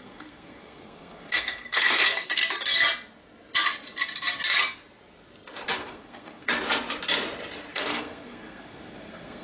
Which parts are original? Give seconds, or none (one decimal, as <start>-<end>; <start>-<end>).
2.4-5.8; 6.5-7.7